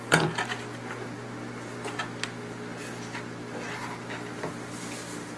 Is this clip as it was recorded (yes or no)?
yes